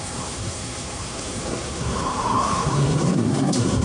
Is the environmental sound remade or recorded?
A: remade